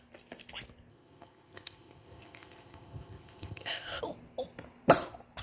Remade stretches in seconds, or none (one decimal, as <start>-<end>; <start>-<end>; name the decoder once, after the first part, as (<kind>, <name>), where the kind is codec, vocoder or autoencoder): 0.9-4.0 (codec, ZipCodec)